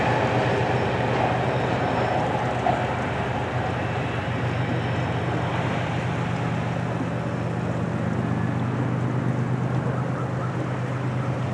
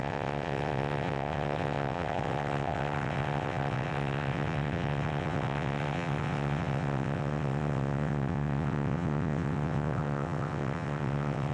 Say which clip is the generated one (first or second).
second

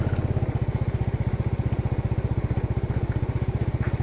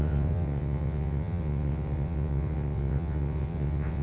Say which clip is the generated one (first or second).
second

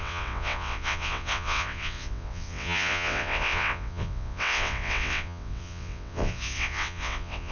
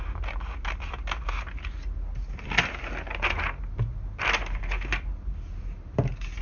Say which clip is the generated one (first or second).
first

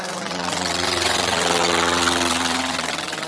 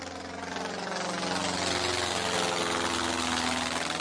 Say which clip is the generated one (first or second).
first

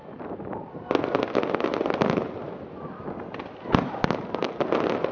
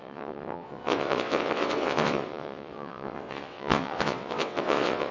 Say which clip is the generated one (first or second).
second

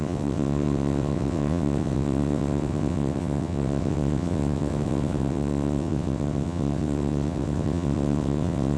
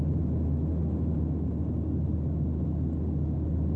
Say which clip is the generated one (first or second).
first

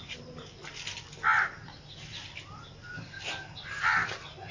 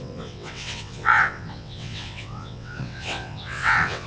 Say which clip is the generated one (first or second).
second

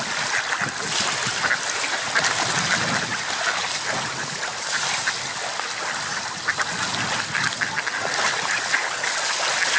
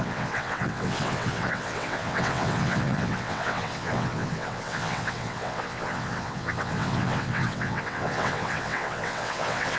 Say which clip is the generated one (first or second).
second